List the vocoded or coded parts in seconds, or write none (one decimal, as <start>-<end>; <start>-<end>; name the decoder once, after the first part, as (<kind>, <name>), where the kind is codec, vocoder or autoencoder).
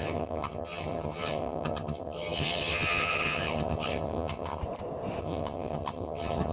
0.0-4.6 (vocoder, HiFi-GAN); 5.2-6.5